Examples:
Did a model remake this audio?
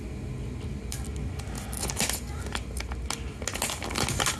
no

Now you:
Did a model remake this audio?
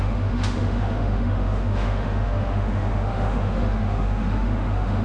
yes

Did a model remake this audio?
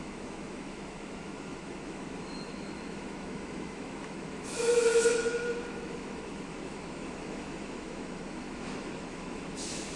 yes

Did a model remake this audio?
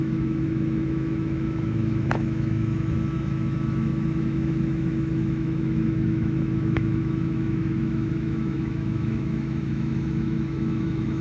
yes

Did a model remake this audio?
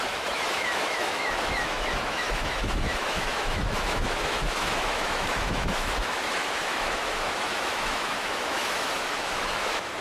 yes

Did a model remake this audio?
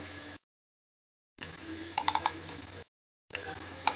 yes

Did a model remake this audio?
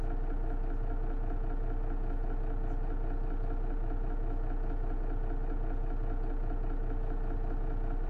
no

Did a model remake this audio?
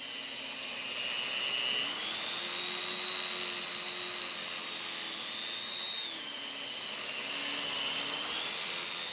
no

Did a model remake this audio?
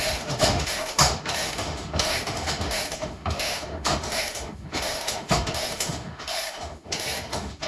yes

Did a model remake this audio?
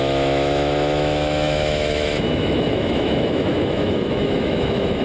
yes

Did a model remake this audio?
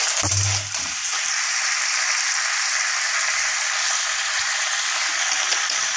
no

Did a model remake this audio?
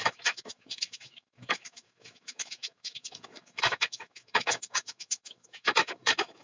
yes